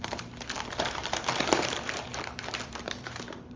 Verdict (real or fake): fake